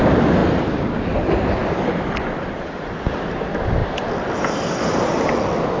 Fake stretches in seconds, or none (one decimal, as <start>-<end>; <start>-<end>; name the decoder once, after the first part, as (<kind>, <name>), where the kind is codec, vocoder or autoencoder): none